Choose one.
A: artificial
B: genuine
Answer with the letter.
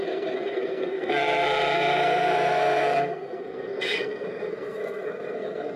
A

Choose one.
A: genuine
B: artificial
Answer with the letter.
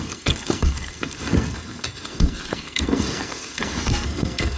B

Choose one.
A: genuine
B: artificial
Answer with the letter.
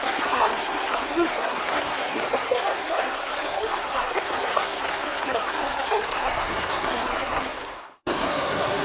B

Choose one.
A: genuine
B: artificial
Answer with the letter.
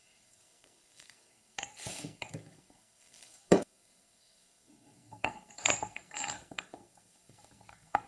B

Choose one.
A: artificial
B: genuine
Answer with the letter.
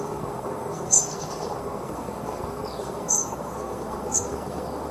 A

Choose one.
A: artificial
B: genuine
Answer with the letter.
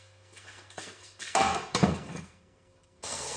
A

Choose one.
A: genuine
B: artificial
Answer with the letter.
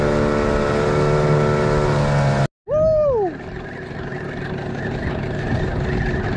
A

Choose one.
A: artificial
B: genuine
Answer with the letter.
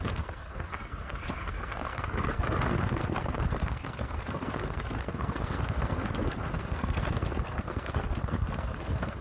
A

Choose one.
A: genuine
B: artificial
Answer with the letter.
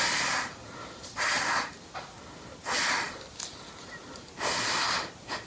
A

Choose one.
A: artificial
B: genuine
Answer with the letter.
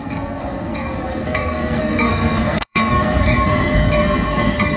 A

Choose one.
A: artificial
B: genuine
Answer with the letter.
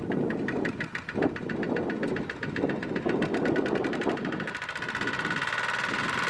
B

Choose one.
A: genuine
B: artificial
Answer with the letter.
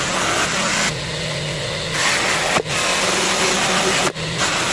A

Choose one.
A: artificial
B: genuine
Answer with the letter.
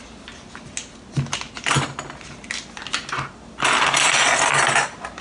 B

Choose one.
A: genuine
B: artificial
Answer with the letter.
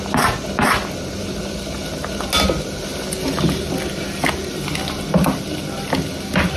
A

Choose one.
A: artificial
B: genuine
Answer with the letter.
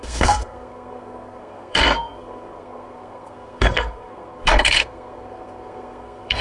A